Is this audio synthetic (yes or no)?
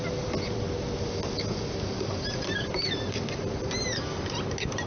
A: no